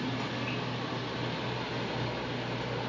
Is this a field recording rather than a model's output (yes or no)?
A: yes